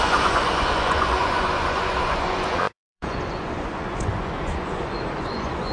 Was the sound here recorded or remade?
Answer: remade